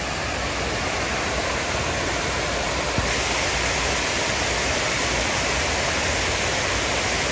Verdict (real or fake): real